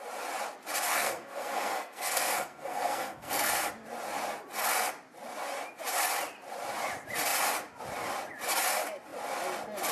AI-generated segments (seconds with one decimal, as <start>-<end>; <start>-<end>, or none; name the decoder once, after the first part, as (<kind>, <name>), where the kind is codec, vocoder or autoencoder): 0.9-3.7 (codec, SNAC)